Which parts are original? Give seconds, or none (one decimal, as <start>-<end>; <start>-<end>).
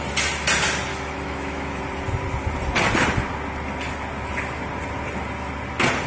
0.0-0.9; 1.8-6.1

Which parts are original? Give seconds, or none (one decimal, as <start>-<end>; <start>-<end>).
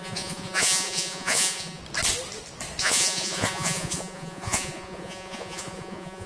1.8-2.8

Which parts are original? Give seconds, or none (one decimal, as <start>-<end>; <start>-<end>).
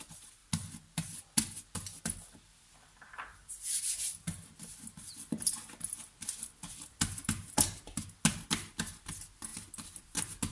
0.0-10.5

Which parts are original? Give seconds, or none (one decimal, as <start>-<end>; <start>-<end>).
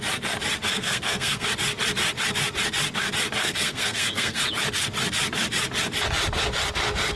0.0-0.7; 1.5-3.4; 4.4-7.2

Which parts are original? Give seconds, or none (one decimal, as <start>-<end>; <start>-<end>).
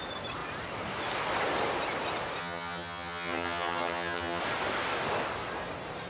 0.0-2.4; 4.4-6.1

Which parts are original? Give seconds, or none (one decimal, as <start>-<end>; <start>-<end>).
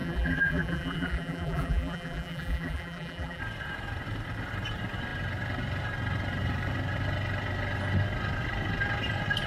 3.4-9.5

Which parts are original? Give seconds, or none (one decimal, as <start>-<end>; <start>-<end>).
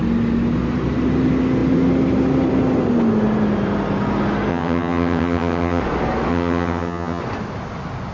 0.0-4.5; 5.8-6.3; 7.2-8.1